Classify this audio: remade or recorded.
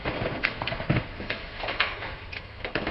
remade